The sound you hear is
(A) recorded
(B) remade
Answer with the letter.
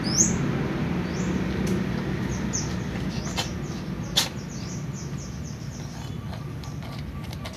A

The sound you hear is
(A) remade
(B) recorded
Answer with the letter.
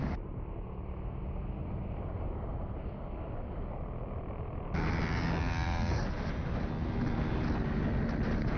B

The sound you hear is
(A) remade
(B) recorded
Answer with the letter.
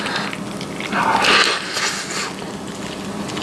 B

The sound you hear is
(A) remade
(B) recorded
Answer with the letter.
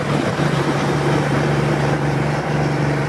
A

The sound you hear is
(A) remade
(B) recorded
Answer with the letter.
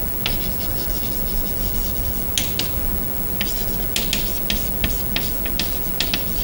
B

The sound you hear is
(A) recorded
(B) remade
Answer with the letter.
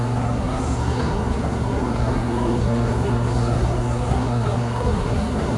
B